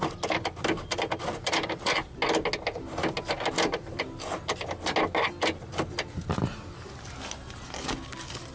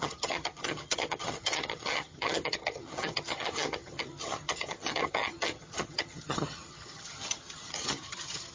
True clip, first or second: first